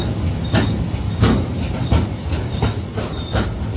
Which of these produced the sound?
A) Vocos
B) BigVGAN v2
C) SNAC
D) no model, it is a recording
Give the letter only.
D